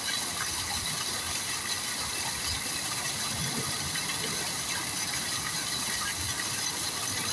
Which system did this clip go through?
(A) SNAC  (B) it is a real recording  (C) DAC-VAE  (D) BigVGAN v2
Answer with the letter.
B